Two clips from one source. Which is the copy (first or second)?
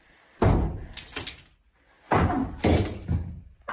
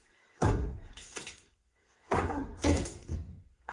second